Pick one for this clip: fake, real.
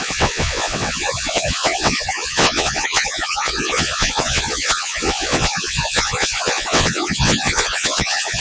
fake